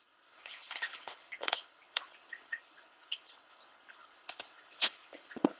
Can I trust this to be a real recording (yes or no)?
no